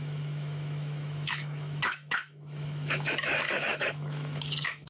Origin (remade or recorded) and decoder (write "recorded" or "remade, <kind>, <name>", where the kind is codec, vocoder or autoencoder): remade, autoencoder, DAC-VAE